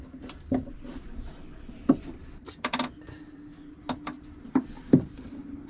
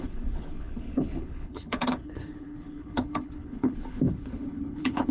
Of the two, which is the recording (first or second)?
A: first